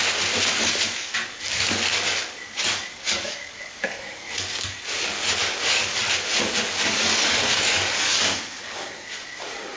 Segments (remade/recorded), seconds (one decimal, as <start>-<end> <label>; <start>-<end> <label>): 0.0-0.5 recorded; 0.5-9.8 remade